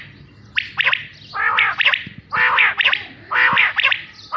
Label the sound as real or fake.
real